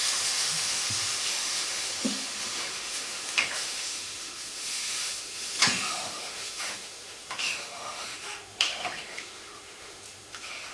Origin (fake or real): fake